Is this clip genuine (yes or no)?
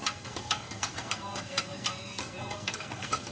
no